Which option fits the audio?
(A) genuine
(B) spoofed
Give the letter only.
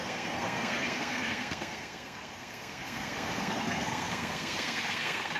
B